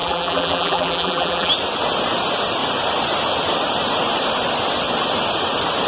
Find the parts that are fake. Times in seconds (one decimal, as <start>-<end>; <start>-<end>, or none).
0.0-1.5